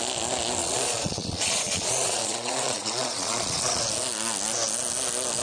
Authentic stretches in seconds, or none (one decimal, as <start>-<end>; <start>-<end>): 0.0-0.6; 3.8-5.4